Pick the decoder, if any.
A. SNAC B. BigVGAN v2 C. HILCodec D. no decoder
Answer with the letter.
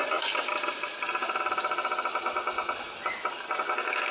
D